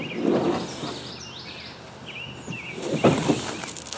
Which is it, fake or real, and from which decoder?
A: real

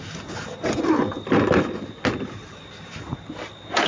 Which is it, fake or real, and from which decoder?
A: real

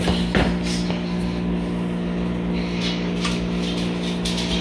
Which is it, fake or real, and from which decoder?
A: real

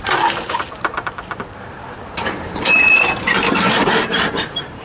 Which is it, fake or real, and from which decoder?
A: fake, vocoder, BigVGAN v2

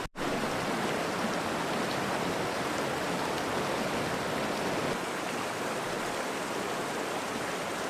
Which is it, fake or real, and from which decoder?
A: real